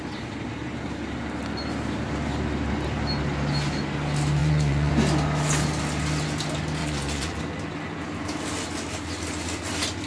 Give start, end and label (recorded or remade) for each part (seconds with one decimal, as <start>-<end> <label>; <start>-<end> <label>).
0.0-4.4 recorded; 4.4-4.9 remade; 4.9-6.8 recorded; 6.8-7.4 remade; 7.4-10.1 recorded